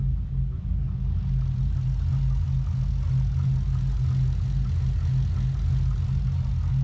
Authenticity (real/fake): real